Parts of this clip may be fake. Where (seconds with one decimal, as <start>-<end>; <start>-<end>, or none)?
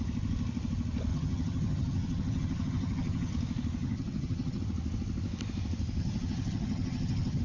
1.1-3.3; 3.8-4.6; 6.0-7.4